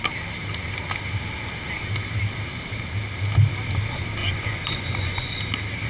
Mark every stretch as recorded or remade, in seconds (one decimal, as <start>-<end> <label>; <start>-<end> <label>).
0.0-4.2 recorded; 4.2-5.4 remade; 5.4-5.9 recorded